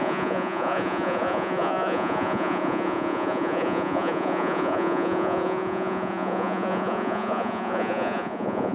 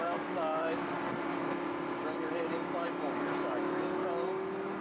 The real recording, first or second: second